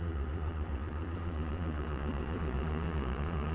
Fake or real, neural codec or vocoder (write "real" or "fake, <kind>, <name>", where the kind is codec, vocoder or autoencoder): fake, vocoder, Vocos